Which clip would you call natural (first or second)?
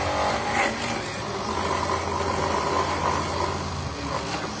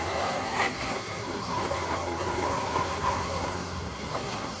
first